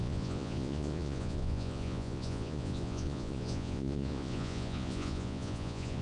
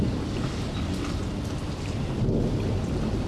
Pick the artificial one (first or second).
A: first